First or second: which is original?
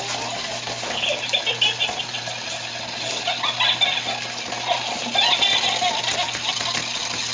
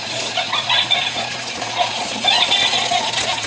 first